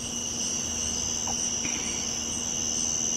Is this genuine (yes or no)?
yes